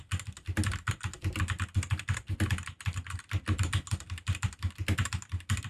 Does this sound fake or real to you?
real